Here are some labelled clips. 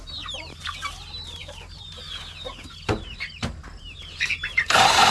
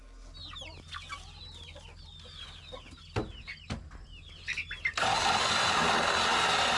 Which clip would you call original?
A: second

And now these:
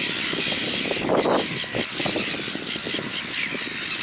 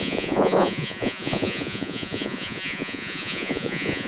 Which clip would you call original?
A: first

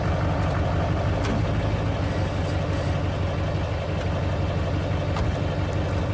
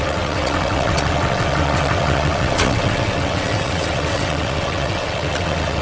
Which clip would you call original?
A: first